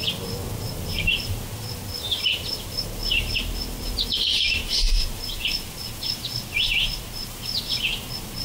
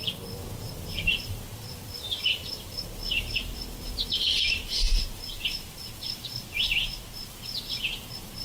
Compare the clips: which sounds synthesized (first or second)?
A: second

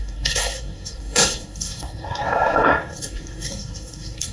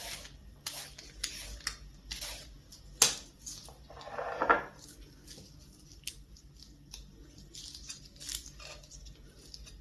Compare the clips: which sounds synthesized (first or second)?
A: first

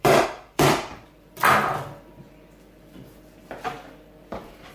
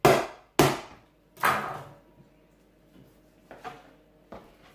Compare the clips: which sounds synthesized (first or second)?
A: first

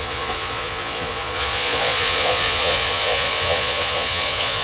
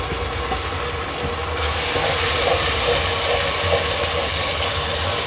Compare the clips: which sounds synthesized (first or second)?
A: first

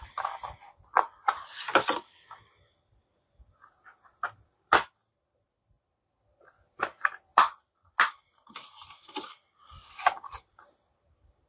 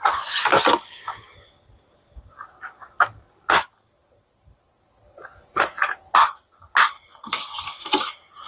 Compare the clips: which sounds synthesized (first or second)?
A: first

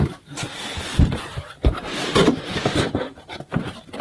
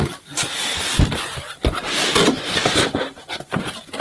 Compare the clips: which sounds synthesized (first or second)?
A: first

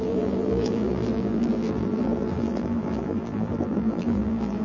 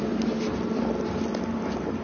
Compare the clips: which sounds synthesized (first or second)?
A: first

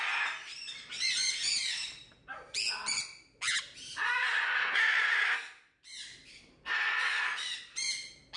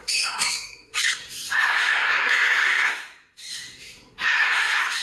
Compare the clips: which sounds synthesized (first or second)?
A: second